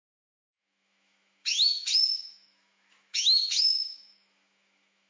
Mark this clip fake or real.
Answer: fake